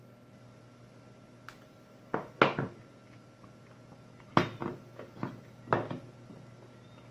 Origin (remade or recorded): recorded